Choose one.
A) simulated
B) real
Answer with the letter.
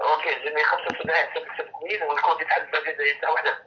B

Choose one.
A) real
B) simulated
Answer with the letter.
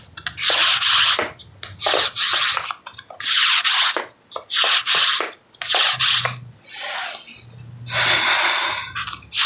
A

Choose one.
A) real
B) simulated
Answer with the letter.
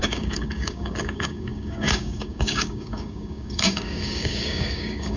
B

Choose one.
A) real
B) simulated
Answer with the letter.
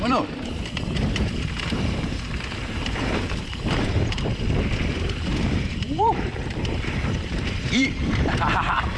B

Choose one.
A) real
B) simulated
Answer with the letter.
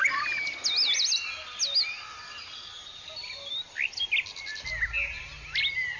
A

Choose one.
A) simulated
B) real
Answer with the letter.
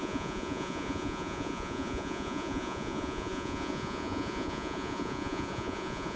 A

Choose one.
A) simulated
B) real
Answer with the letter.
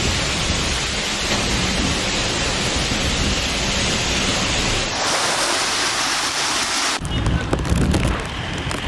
B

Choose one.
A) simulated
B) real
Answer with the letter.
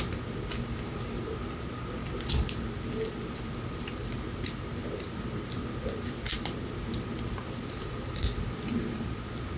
B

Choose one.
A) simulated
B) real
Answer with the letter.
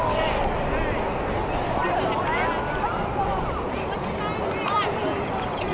B